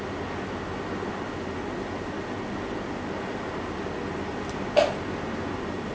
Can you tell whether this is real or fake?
real